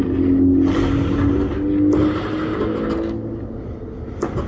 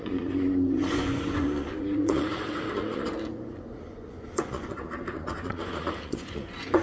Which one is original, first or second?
first